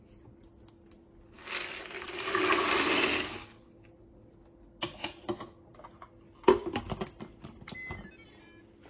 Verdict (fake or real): real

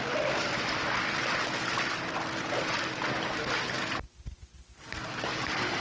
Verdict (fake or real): real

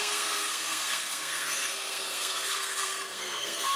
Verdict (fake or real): fake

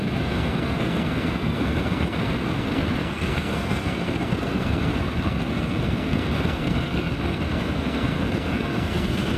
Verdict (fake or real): fake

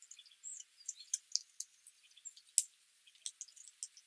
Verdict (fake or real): real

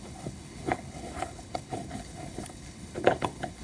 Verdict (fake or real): fake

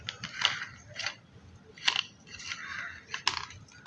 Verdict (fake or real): real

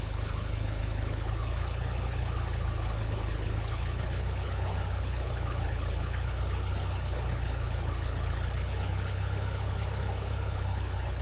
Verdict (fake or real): fake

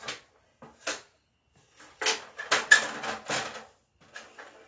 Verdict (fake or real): real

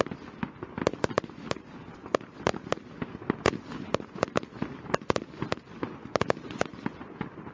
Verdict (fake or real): real